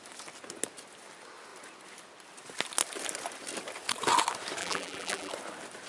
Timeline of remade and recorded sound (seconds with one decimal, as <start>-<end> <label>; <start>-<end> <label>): 0.0-4.6 recorded; 4.6-5.3 remade; 5.3-5.9 recorded